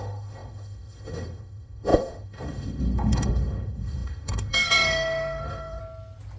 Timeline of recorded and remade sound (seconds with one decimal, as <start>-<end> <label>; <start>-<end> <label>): 0.0-5.8 remade; 5.8-6.4 recorded

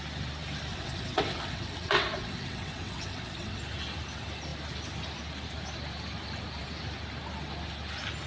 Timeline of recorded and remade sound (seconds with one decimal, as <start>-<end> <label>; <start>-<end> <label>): 0.0-0.7 recorded; 0.7-3.6 remade; 3.6-8.3 recorded

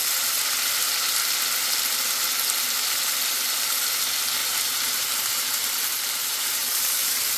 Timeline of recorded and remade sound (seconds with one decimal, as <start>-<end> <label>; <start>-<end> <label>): 0.0-4.4 recorded; 4.4-7.4 remade

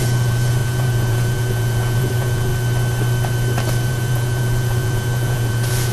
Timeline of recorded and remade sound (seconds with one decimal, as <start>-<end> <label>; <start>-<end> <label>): 0.0-2.5 remade; 2.5-3.9 recorded; 3.9-5.9 remade

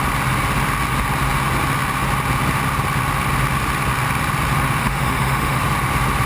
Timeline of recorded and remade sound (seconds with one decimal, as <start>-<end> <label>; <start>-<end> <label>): 0.0-4.8 recorded; 4.8-5.6 remade; 5.6-6.3 recorded

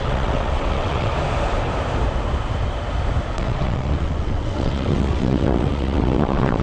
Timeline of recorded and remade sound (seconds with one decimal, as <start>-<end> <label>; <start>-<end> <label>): 0.0-1.1 remade; 1.1-3.3 recorded; 3.3-6.6 remade

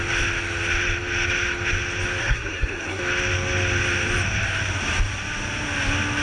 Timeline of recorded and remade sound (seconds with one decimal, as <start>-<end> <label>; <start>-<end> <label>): 0.0-2.2 recorded; 2.2-3.0 remade; 3.0-6.2 recorded

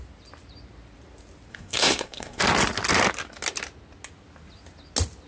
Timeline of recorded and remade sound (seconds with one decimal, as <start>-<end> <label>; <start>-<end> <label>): 0.0-1.5 recorded; 1.5-2.4 remade; 2.4-5.3 recorded